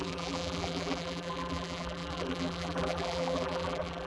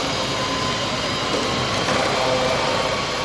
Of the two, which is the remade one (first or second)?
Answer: first